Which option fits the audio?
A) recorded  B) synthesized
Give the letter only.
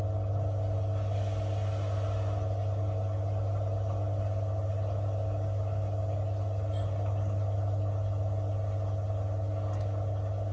A